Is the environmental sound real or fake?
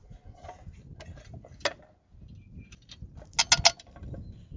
real